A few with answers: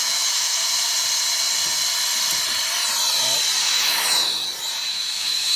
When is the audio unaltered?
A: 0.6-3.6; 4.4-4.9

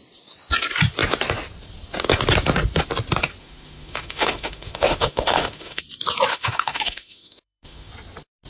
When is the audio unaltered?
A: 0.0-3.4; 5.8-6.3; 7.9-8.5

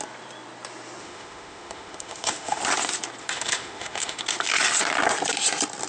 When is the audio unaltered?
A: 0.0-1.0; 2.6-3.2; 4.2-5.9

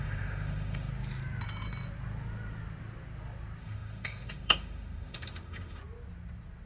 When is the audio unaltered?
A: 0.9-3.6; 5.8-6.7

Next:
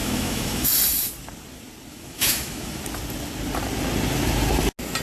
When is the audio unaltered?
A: 0.7-1.9; 2.8-5.0

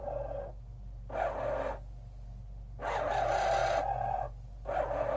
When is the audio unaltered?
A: 0.0-5.2

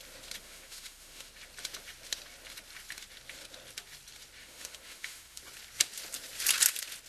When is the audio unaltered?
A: 0.0-0.4; 1.3-4.4; 5.4-7.1

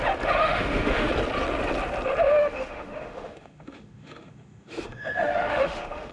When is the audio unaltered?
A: 0.0-0.4; 1.1-2.3